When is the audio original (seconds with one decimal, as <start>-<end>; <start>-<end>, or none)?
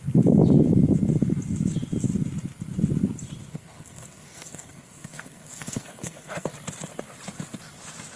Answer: 0.0-3.5; 6.5-8.2